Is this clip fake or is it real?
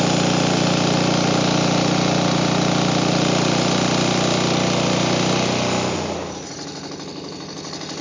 real